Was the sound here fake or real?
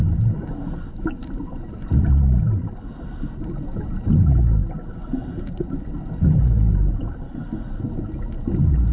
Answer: real